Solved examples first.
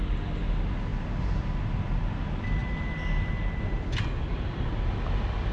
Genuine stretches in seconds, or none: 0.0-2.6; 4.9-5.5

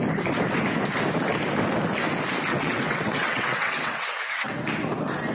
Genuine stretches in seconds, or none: 0.0-2.5; 4.5-5.3

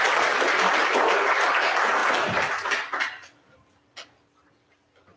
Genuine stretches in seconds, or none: 0.0-5.2